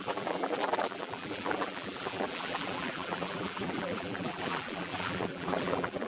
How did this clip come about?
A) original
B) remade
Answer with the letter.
B